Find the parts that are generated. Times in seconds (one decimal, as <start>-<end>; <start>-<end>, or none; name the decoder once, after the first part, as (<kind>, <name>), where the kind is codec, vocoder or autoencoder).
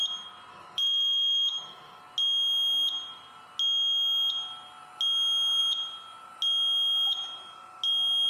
0.5-2.0 (autoencoder, DAC-VAE)